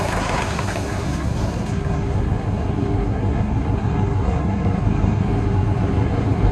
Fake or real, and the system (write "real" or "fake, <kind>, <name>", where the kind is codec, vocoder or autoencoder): fake, codec, SNAC